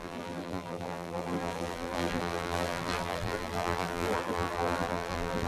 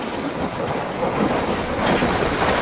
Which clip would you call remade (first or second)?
first